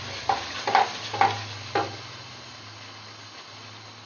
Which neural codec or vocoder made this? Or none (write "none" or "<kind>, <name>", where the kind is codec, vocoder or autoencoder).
none